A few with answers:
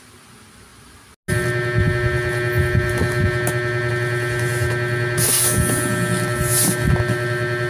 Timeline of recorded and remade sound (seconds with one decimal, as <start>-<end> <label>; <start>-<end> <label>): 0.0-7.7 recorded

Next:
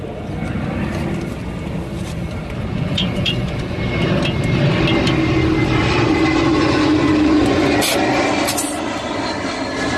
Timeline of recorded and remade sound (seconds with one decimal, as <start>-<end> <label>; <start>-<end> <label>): 0.0-2.6 recorded; 2.6-3.8 remade; 3.8-6.4 recorded; 6.4-7.7 remade; 7.7-10.0 recorded

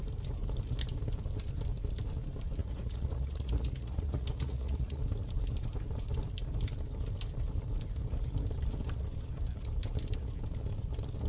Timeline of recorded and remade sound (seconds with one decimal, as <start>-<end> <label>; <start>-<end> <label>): 0.0-2.6 recorded; 2.6-5.0 remade; 5.0-11.3 recorded

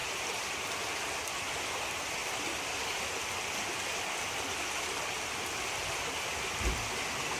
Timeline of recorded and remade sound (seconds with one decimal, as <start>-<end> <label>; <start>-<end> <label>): 0.0-7.4 recorded

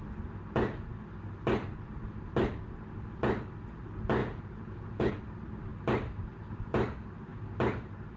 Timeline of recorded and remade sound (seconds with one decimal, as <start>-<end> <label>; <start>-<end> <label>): 0.0-4.2 recorded; 4.2-5.1 remade; 5.1-8.2 recorded

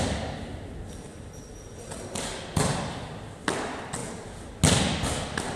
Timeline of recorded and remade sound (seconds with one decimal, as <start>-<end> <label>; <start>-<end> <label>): 0.0-5.6 recorded

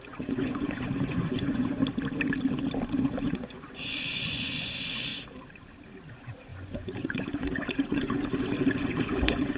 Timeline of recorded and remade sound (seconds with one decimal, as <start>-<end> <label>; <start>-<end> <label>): 0.0-1.8 remade; 1.8-3.0 recorded; 3.0-5.1 remade; 5.1-6.1 recorded; 6.1-9.6 remade